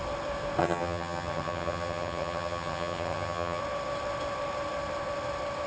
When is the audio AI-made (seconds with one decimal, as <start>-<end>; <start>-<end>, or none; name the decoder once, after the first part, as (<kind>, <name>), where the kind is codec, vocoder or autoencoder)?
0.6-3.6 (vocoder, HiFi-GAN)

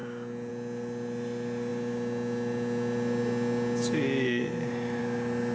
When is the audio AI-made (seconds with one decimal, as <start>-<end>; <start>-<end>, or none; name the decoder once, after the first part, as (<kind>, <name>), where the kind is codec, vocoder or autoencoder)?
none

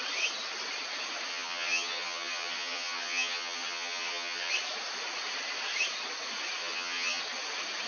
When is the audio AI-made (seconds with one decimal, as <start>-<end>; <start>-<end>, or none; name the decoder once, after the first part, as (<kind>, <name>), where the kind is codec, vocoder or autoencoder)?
1.3-4.5 (vocoder, HiFi-GAN); 6.6-7.2